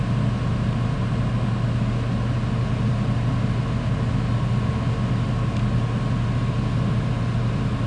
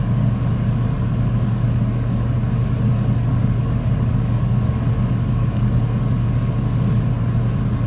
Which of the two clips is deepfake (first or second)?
second